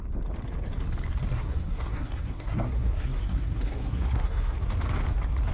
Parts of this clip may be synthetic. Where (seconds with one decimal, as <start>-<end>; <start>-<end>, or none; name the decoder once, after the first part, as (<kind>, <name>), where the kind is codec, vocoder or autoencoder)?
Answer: 1.3-4.6 (codec, SNAC)